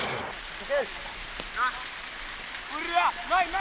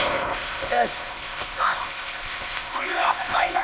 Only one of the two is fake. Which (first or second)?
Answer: second